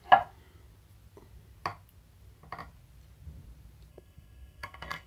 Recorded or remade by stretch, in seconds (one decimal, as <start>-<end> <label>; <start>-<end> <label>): 0.0-3.9 recorded; 3.9-5.1 remade